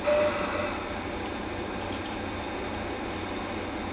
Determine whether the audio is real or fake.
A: real